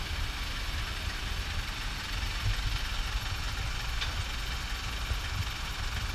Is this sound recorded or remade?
recorded